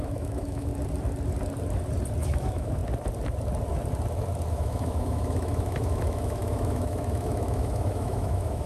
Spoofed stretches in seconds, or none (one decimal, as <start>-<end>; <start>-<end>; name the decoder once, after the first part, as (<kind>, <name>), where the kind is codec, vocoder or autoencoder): 0.0-0.7 (autoencoder, DAC-VAE); 2.2-2.8; 4.5-8.7